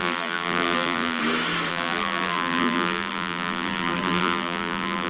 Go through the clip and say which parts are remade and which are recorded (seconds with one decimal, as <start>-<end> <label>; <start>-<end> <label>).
0.0-1.2 remade; 1.2-1.7 recorded; 1.7-5.1 remade